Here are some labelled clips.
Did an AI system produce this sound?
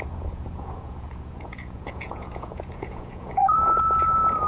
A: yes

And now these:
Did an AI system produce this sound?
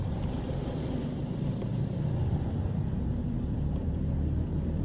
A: no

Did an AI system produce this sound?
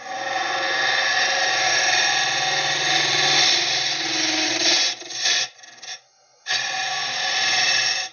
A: no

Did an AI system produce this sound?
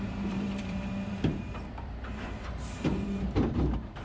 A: yes